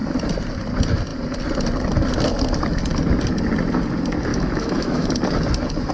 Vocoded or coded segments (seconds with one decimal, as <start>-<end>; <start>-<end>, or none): 4.3-5.1